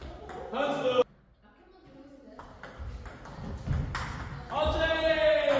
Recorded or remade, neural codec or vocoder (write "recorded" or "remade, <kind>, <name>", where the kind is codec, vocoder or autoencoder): recorded